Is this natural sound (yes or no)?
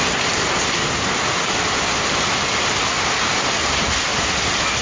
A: yes